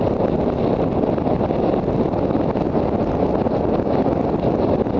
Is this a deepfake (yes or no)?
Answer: no